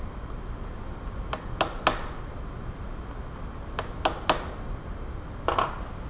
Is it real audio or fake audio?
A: real